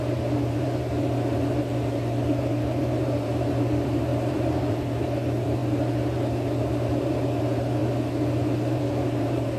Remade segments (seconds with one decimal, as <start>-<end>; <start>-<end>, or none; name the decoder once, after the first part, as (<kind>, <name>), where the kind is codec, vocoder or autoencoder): 0.0-5.6 (vocoder, BigVGAN v2); 6.6-7.8; 8.3-9.6